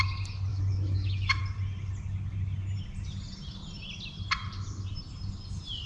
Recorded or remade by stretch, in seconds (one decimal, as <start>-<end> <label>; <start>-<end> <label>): 0.0-0.5 recorded; 0.5-1.4 remade; 1.4-5.9 recorded